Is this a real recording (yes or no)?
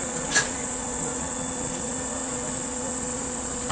no